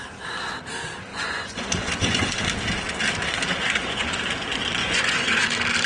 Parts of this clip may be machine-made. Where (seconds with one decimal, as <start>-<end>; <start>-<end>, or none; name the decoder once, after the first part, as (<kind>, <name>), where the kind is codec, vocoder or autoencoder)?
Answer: 1.1-2.3 (vocoder, Vocos); 3.6-4.2; 4.8-5.5